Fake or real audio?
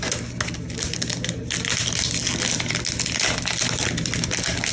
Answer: real